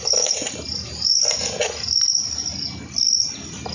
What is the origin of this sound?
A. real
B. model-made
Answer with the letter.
A